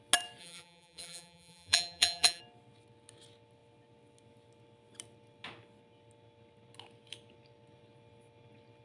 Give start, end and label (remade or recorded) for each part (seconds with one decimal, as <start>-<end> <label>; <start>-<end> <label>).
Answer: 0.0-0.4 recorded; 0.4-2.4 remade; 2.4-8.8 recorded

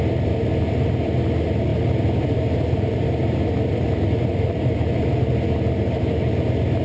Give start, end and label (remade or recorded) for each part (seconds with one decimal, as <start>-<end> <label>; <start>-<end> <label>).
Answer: 0.0-1.7 recorded; 1.7-5.3 remade; 5.3-6.8 recorded

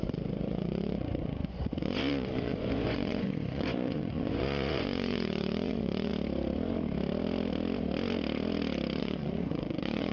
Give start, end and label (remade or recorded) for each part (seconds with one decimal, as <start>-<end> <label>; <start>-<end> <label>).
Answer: 0.0-6.1 remade; 6.1-9.0 recorded; 9.0-10.1 remade

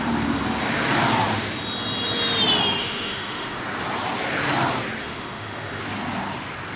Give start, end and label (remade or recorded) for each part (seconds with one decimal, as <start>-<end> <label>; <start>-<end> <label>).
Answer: 0.0-2.8 recorded; 2.8-3.6 remade; 3.6-5.0 recorded; 5.0-5.8 remade; 5.8-6.8 recorded

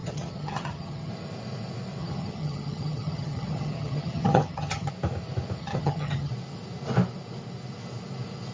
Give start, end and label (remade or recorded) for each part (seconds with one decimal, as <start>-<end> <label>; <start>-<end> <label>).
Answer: 0.0-1.1 remade; 1.1-2.0 recorded; 2.0-4.9 remade; 4.9-5.6 recorded; 5.6-6.3 remade; 6.3-8.5 recorded

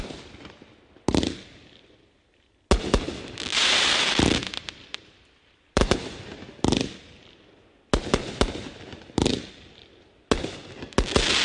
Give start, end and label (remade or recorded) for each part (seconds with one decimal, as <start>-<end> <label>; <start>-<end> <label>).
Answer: 0.0-3.6 recorded; 3.6-5.9 remade; 5.9-11.4 recorded